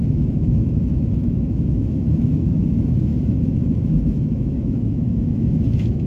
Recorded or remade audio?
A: remade